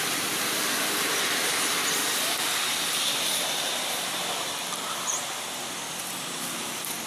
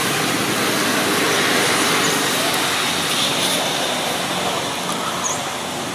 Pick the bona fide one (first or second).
second